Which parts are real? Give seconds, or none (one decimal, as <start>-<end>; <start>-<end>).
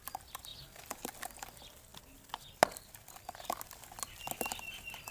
0.0-5.1